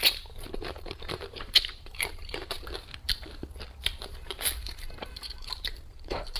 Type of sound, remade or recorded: remade